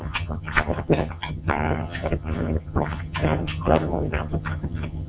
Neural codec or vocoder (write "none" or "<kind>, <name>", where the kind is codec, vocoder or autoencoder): vocoder, HiFi-GAN